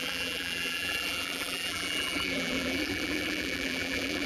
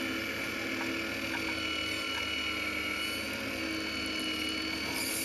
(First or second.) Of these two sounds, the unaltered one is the second